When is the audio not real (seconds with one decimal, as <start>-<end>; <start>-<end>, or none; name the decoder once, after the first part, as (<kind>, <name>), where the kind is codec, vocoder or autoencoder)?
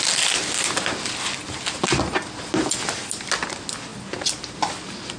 none